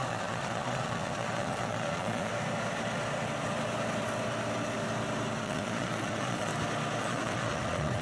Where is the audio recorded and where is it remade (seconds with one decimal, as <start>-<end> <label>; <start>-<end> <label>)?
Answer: 0.0-2.3 remade; 2.3-5.4 recorded; 5.4-6.5 remade; 6.5-7.0 recorded; 7.0-8.0 remade